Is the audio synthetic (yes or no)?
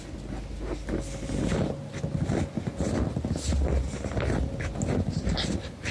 no